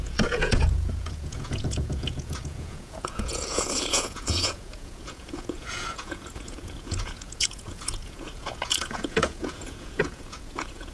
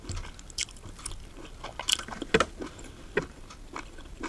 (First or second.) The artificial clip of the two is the first